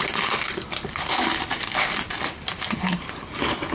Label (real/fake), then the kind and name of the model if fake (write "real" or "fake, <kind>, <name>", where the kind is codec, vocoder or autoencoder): real